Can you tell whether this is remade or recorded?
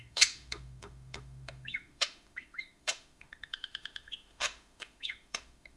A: remade